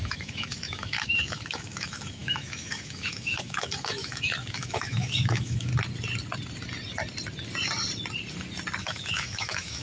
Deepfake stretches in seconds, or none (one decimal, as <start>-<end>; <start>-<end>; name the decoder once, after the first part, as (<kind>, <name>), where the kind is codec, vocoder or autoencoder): 0.0-5.7 (autoencoder, DAC-VAE); 8.8-9.8